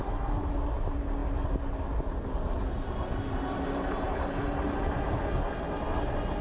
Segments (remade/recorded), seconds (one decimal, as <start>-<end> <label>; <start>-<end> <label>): 0.0-6.4 recorded